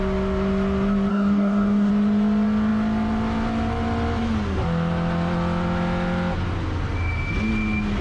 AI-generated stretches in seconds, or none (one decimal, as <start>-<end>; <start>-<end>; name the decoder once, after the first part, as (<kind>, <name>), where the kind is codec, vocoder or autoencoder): 1.1-1.9 (codec, DAC)